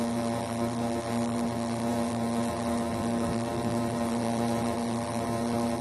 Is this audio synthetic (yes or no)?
yes